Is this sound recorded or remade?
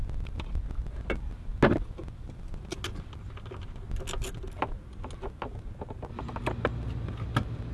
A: recorded